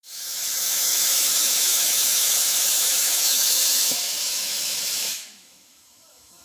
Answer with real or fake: fake